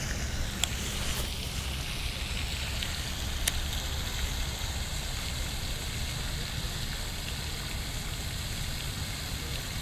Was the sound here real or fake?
real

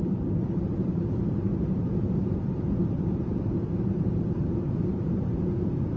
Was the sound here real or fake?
fake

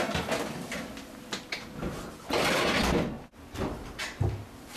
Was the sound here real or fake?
real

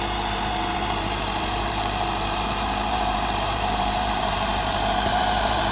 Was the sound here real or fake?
fake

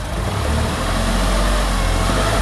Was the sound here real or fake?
real